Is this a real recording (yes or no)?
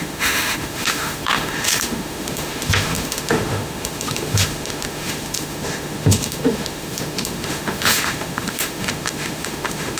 no